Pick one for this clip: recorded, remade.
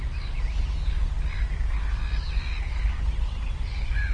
recorded